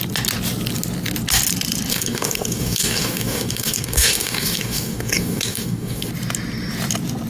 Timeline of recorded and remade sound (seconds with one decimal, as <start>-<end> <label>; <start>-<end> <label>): 0.0-1.9 recorded; 1.9-6.1 remade; 6.1-7.3 recorded